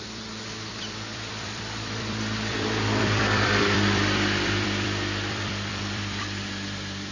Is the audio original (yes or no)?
no